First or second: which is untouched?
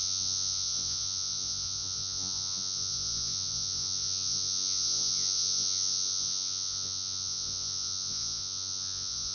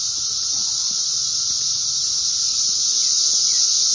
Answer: second